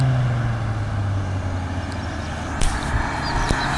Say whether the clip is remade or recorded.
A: recorded